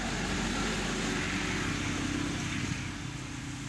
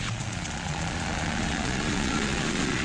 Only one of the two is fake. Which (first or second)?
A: second